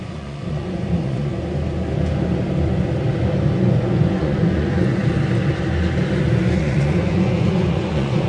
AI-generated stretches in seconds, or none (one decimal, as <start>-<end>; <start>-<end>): 0.0-1.3; 3.6-5.0; 6.6-8.3